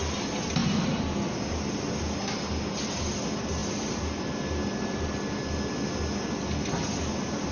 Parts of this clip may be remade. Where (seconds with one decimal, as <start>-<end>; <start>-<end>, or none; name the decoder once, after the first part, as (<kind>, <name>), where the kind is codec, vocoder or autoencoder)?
none